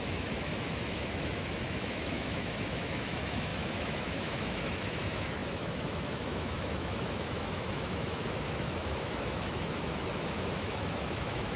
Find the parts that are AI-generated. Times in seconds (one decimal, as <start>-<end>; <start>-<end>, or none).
0.0-11.6